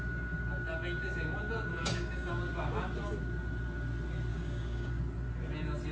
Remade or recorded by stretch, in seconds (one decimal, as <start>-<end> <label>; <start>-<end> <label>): 0.0-1.7 recorded; 1.7-2.3 remade; 2.3-4.3 recorded; 4.3-5.0 remade; 5.0-5.9 recorded

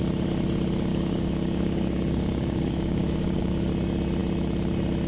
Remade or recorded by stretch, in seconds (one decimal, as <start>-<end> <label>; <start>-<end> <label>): 0.0-0.9 recorded; 0.9-3.7 remade; 3.7-5.1 recorded

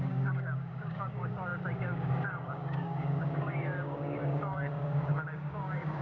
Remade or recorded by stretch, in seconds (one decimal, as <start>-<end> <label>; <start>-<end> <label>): 0.0-6.0 remade

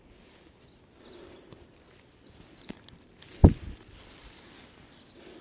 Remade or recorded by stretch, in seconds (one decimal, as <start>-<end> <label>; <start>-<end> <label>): 0.0-5.4 recorded

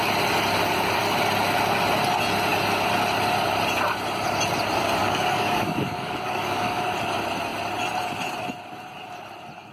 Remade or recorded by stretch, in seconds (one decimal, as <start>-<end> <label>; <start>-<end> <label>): 0.0-5.0 recorded; 5.0-6.8 remade; 6.8-9.7 recorded